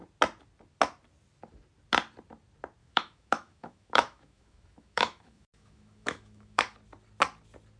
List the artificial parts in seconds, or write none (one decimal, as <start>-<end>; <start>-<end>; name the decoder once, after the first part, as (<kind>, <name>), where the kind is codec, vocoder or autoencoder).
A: 2.8-6.6 (autoencoder, DAC-VAE)